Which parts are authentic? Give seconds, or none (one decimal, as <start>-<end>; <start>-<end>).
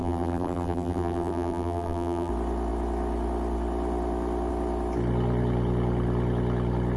2.3-7.0